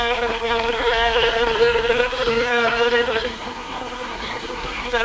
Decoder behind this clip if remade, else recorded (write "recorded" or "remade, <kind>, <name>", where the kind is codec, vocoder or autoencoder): remade, codec, SNAC